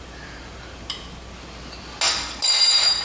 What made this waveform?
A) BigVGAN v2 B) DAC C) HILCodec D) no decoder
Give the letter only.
D